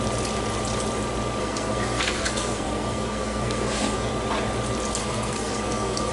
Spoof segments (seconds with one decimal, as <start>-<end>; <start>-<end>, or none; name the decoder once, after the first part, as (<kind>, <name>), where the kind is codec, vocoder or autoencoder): 1.4-4.1 (codec, SNAC); 5.0-6.1